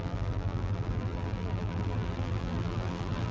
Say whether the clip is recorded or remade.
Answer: remade